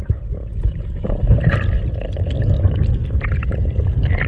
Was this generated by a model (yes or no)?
no